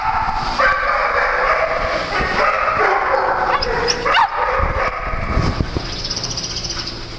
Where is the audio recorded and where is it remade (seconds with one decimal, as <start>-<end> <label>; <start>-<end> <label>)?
0.0-1.0 recorded; 1.0-5.3 remade; 5.3-7.2 recorded